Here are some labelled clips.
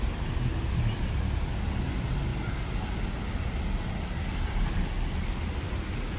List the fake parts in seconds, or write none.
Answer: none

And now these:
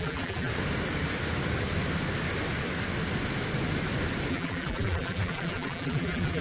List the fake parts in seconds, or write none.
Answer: 0.0-0.5 (vocoder, BigVGAN v2); 4.3-6.4